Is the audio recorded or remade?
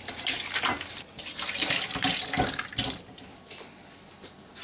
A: recorded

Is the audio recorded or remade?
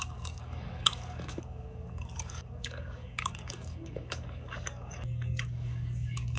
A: remade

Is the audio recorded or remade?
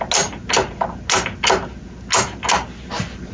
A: recorded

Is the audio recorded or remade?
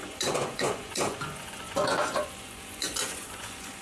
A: remade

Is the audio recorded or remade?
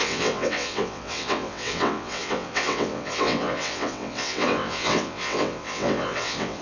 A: remade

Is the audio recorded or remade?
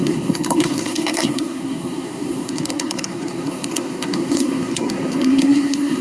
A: remade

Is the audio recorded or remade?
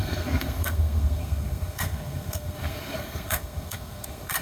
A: remade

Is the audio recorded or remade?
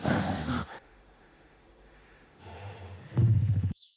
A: remade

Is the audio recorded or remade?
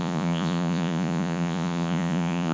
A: remade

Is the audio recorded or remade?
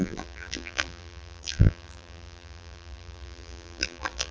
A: remade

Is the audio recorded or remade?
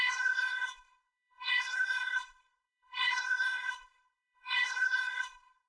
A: remade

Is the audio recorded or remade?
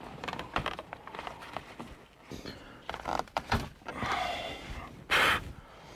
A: remade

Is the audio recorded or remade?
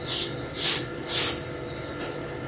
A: recorded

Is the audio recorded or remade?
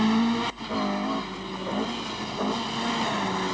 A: recorded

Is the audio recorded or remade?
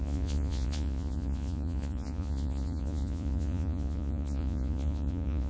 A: remade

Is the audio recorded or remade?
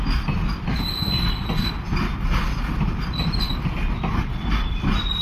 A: recorded